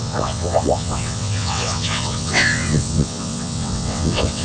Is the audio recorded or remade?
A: remade